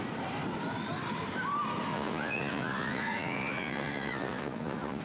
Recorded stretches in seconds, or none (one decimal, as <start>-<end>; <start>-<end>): 0.0-1.9

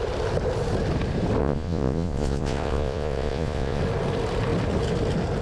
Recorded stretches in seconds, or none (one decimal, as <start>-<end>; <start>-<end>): 0.0-1.4; 3.8-5.4

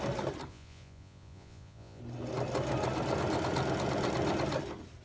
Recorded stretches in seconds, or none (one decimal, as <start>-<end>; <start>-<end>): 0.0-0.5; 2.0-5.0

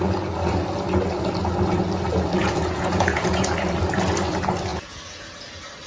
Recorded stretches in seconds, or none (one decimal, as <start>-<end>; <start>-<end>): 0.0-2.4; 3.5-4.7; 5.3-5.9